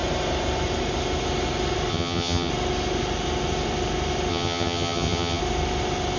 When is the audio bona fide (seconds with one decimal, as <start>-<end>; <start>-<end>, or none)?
0.0-1.9; 2.5-4.3; 5.4-6.2